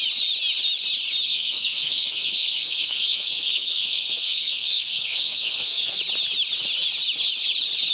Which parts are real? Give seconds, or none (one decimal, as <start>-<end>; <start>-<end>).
0.0-1.3; 6.0-7.9